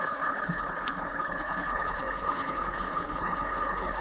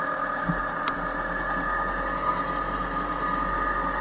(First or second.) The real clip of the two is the second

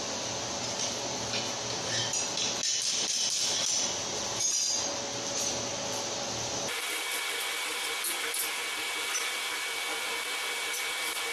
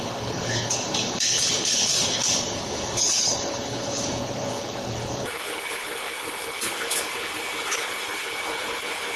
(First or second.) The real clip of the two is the first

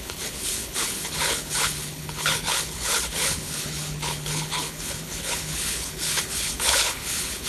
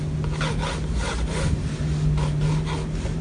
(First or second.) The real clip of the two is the second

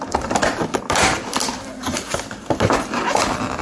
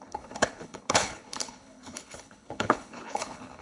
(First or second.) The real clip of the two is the first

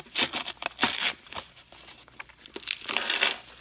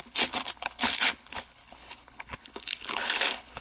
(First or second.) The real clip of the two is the first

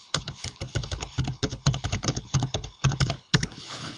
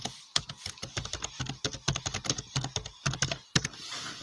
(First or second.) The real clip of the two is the second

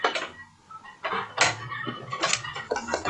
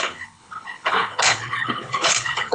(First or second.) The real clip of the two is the first